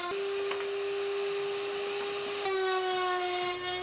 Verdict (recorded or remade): recorded